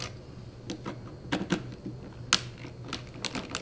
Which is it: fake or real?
real